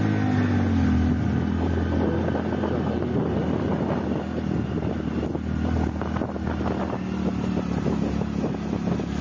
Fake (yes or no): no